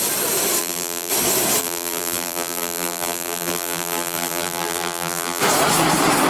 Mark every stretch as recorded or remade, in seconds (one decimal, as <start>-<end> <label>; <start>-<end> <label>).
0.0-0.6 recorded; 0.6-1.1 remade; 1.1-1.6 recorded; 1.6-5.4 remade; 5.4-6.3 recorded